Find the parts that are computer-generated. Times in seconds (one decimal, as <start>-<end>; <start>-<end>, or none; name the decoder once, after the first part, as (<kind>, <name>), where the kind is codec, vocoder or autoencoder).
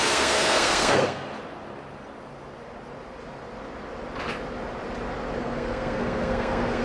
0.0-1.3 (codec, SNAC); 5.4-6.8